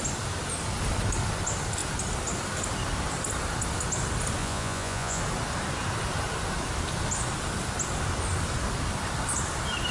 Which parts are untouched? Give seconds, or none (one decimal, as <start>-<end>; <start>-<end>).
0.0-4.4; 5.2-9.9